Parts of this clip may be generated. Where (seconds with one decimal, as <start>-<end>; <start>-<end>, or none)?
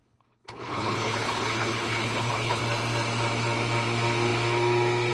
0.0-2.6